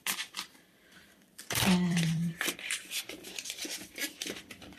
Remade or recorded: remade